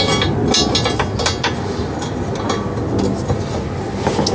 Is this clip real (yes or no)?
yes